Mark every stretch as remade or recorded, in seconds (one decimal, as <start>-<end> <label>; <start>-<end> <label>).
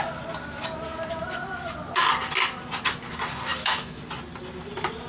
0.0-3.5 recorded; 3.5-4.0 remade; 4.0-5.1 recorded